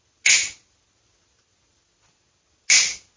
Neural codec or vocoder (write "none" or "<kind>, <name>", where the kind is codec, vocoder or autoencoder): none